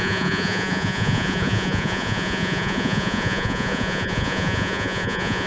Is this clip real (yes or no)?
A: no